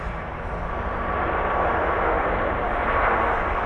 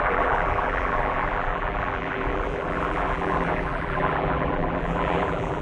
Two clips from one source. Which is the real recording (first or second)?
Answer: first